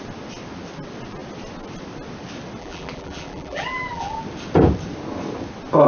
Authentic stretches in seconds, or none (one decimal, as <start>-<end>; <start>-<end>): 0.0-2.6; 4.2-5.9